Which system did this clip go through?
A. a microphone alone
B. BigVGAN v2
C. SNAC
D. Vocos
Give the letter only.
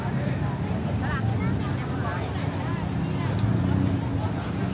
A